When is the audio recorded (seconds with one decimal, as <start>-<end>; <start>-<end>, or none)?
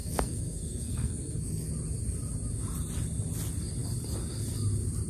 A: 1.7-5.1